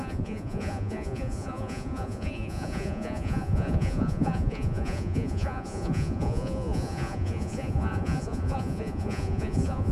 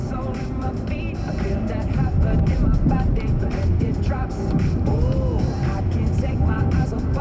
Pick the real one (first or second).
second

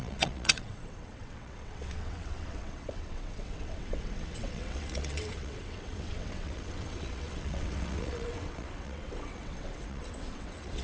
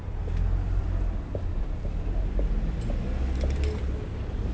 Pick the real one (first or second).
second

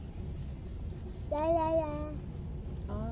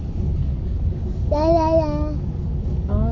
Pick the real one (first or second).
first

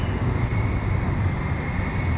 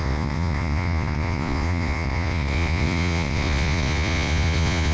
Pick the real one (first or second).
first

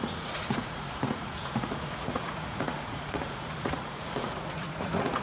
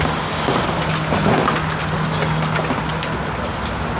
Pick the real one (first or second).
second